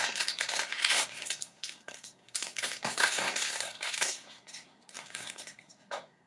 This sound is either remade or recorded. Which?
remade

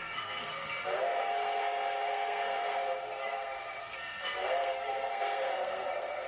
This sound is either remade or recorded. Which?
remade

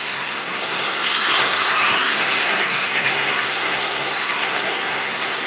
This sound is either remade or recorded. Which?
remade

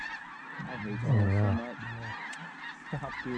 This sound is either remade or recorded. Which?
recorded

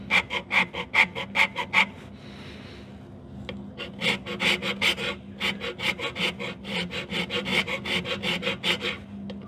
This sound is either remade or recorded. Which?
recorded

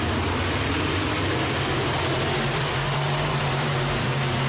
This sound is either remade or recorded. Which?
recorded